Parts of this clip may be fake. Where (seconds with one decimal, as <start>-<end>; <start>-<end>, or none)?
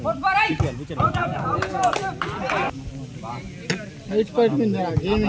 1.2-1.9